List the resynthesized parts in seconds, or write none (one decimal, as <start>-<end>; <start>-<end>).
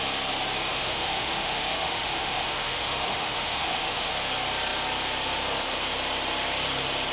0.7-4.1